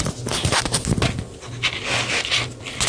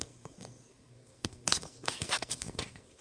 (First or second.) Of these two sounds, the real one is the first